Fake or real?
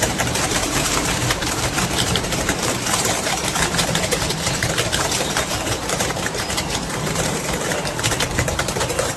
fake